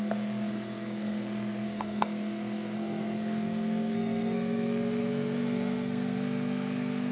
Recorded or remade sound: remade